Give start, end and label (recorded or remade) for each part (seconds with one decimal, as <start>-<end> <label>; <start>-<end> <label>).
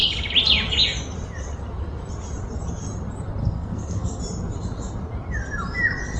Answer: 0.0-3.4 recorded; 3.4-4.2 remade; 4.2-6.2 recorded